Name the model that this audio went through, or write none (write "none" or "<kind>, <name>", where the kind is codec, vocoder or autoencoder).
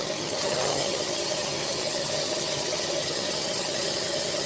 vocoder, HiFi-GAN